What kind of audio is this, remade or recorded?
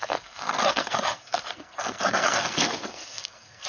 remade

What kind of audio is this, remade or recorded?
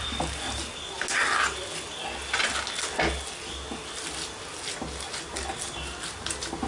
recorded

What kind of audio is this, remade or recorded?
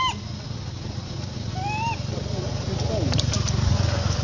recorded